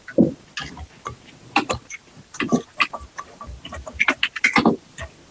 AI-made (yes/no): no